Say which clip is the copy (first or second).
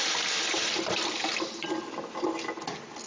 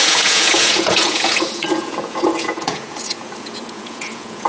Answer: second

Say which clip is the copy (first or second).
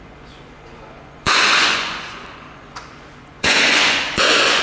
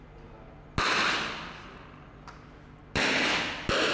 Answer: first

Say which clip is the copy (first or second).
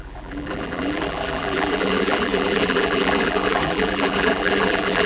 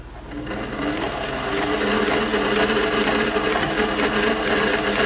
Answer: first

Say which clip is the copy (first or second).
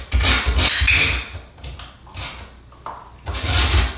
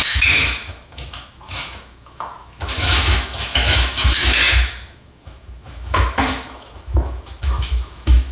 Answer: second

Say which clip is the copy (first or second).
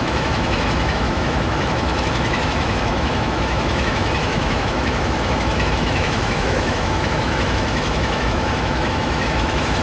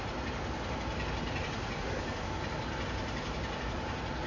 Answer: first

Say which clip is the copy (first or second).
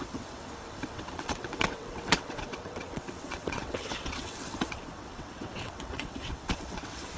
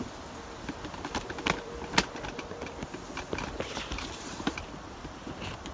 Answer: first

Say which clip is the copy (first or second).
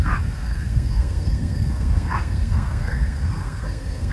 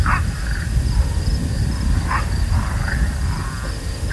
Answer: first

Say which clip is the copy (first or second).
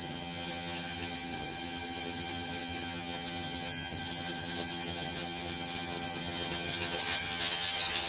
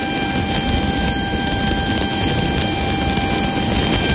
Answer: first